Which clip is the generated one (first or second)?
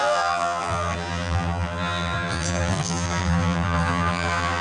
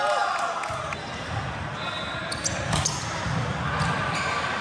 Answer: first